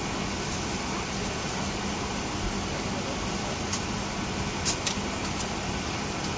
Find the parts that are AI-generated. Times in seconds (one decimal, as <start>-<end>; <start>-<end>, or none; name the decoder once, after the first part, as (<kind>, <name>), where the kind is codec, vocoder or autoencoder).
none